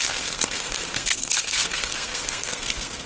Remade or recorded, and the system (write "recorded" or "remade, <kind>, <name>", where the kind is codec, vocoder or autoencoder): remade, codec, SNAC